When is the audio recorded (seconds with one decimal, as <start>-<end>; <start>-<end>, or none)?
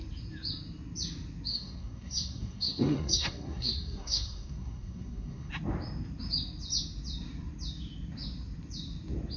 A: 0.0-1.5; 5.5-9.4